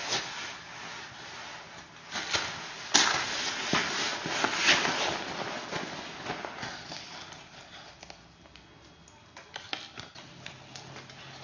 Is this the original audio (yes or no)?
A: yes